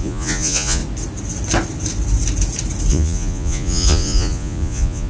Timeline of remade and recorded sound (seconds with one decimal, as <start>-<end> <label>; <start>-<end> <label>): 0.0-0.8 remade; 0.8-2.9 recorded; 2.9-5.1 remade